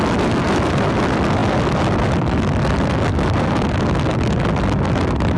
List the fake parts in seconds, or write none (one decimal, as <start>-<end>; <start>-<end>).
none